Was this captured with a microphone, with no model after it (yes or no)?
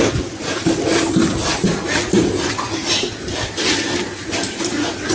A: yes